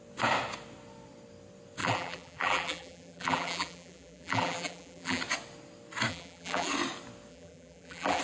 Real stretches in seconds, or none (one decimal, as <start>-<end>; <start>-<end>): 0.0-1.8; 5.2-6.1; 6.7-7.3